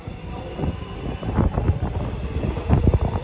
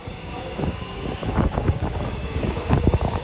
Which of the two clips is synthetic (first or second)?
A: second